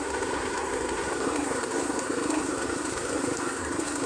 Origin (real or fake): fake